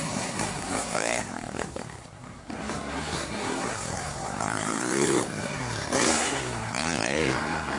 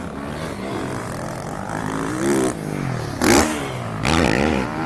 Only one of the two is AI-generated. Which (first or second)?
first